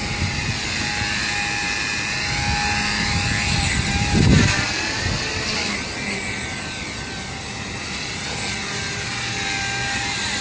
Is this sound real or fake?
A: real